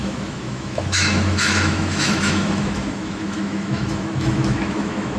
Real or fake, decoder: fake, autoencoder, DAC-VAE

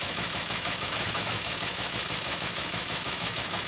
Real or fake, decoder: fake, autoencoder, DAC-VAE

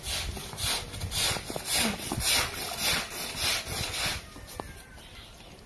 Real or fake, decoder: real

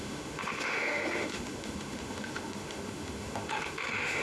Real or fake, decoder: fake, autoencoder, DAC-VAE